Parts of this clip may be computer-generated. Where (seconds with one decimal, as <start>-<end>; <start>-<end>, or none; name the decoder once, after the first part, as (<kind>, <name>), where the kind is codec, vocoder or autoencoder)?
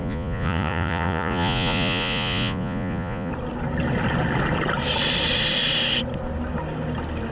0.0-3.3 (vocoder, Vocos)